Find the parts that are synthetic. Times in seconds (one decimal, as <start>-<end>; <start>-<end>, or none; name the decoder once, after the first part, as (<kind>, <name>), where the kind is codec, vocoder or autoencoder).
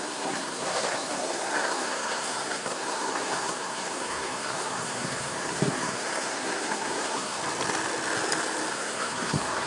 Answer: 0.0-7.4 (codec, SNAC); 8.7-9.7